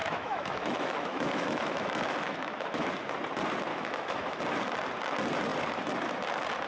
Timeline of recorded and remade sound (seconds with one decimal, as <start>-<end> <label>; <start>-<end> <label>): 0.0-2.9 remade; 2.9-3.7 recorded; 3.7-4.4 remade; 4.4-6.7 recorded